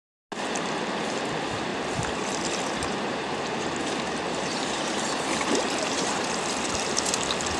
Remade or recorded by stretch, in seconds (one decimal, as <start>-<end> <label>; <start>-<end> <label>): 0.0-1.7 recorded; 1.7-6.3 remade; 6.3-7.6 recorded